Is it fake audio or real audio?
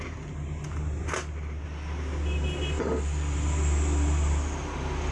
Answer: real